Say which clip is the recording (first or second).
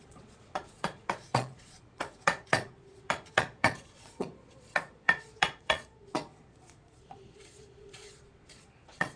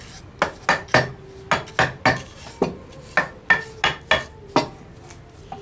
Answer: second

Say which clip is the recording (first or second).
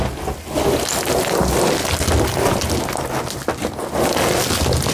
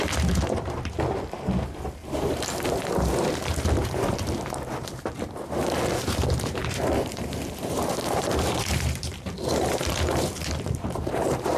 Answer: first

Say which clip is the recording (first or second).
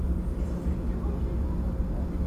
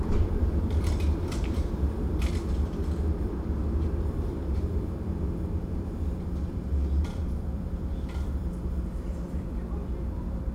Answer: first